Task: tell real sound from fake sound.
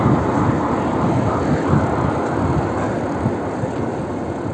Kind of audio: real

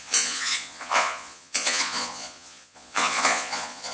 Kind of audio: fake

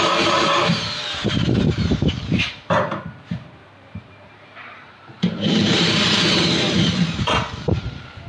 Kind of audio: fake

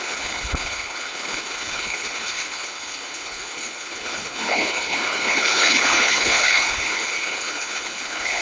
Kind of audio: fake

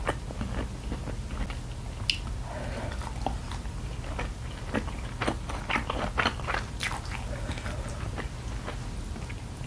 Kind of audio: real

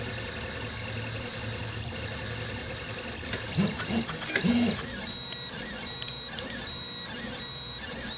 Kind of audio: real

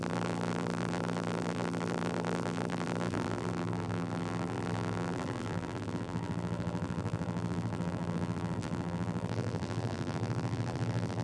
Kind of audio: fake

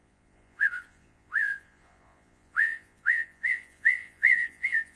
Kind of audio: fake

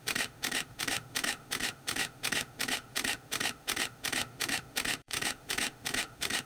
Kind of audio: fake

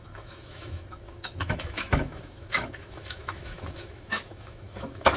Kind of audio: fake